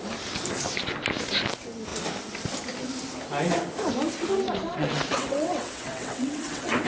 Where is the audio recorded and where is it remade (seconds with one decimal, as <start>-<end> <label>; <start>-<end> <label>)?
0.0-4.7 recorded; 4.7-6.9 remade